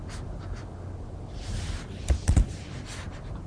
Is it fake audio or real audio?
real